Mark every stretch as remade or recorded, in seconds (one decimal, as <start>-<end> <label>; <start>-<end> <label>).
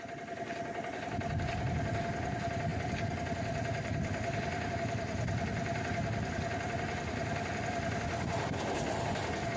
0.0-9.6 recorded